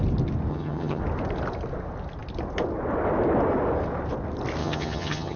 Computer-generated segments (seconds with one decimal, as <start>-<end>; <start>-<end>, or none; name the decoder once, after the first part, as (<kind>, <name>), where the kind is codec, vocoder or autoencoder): 0.5-1.0 (vocoder, HiFi-GAN); 4.6-5.4